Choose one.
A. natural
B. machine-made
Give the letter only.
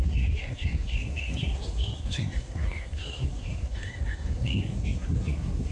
B